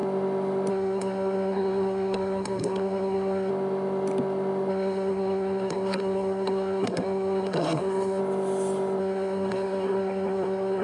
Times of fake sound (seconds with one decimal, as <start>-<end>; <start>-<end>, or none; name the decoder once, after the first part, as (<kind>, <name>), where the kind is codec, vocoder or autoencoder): 0.7-3.5 (codec, SNAC); 4.7-8.2; 9.0-10.8